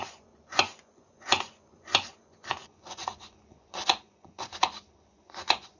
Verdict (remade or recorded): remade